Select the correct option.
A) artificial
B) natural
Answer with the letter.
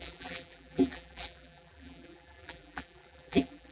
A